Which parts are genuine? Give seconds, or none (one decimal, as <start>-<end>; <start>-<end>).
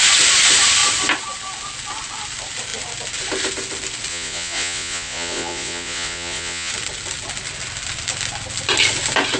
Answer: 0.0-4.1; 6.7-9.4